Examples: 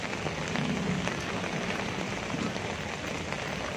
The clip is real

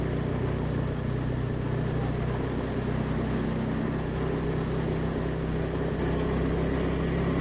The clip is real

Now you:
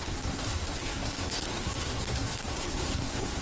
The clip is fake